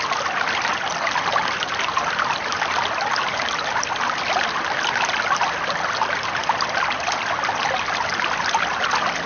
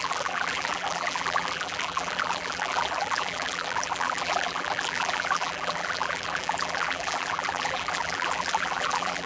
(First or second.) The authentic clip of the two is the first